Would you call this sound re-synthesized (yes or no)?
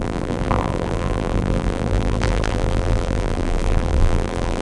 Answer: yes